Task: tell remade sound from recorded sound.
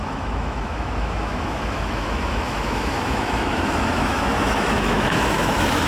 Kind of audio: remade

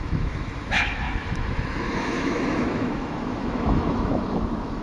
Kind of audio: remade